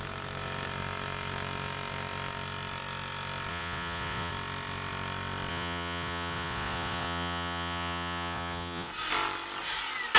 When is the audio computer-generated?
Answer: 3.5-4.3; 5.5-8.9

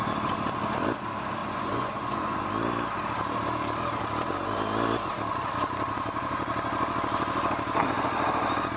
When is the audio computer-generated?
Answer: 1.4-2.4

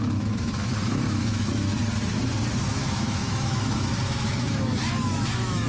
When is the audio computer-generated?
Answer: 0.0-1.7; 2.5-5.7

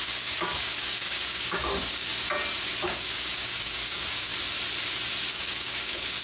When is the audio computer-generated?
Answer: 0.0-2.1; 2.9-4.3; 5.3-6.2

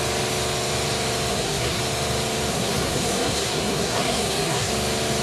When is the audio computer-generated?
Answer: 1.3-1.8; 2.5-4.7